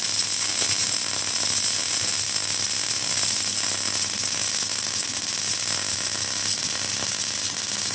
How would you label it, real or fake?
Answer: real